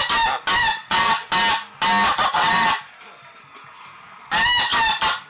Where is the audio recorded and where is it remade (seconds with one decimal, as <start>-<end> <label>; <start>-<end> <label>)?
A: 0.0-0.8 recorded; 0.8-1.3 remade; 1.3-2.2 recorded; 2.2-2.8 remade; 2.8-5.3 recorded